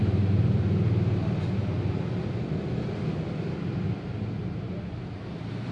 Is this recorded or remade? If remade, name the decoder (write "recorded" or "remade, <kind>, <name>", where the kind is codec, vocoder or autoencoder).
recorded